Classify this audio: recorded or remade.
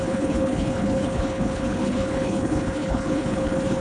remade